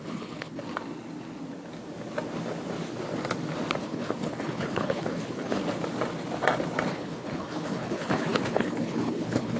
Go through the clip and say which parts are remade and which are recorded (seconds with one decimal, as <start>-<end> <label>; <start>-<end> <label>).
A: 0.0-0.6 remade; 0.6-3.8 recorded; 3.8-5.6 remade; 5.6-6.9 recorded; 6.9-9.6 remade